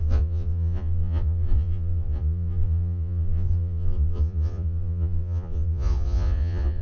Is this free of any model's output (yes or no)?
no